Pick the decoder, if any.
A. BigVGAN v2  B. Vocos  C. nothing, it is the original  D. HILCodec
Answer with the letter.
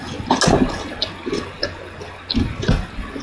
C